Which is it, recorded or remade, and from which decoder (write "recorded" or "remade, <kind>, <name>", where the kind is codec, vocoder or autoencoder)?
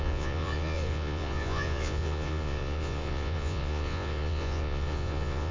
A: remade, vocoder, Vocos